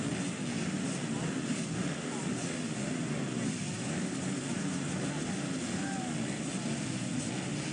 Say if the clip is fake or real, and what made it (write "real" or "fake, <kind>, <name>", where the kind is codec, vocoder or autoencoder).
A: real